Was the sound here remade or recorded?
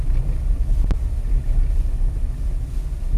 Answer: recorded